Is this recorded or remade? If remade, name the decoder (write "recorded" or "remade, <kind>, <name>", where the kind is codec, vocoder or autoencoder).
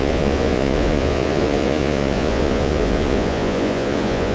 remade, vocoder, Vocos